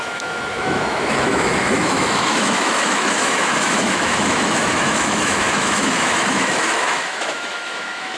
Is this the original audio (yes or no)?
no